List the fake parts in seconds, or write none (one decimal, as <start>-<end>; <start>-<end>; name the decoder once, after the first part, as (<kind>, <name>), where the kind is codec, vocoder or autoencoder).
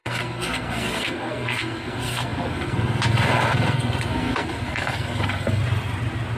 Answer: 0.0-5.6 (codec, SNAC)